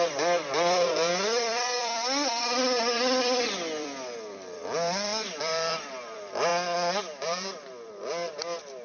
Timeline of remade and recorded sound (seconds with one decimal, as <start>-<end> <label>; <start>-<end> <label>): 0.0-6.5 remade; 6.5-7.0 recorded; 7.0-8.8 remade